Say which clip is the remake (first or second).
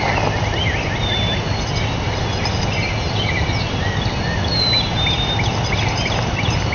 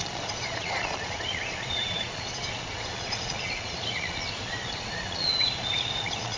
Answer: second